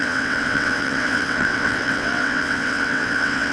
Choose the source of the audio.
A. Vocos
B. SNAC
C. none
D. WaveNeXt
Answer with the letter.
D